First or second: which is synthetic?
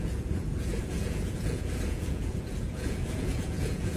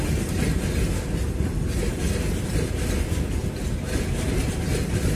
first